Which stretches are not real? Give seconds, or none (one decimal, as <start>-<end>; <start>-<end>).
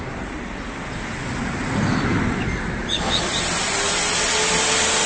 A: 0.0-1.4; 2.8-3.5